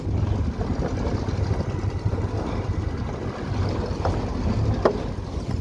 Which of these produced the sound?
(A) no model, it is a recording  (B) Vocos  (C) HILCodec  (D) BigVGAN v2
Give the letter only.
A